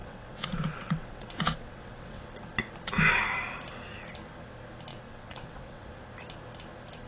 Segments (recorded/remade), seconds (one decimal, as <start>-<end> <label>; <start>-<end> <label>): 0.0-2.2 remade; 2.2-4.9 recorded; 4.9-5.9 remade; 5.9-7.1 recorded